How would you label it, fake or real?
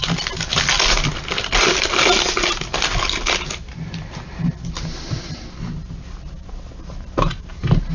real